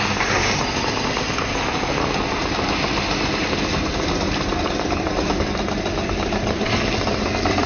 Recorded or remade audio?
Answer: recorded